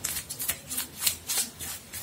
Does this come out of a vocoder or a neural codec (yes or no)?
no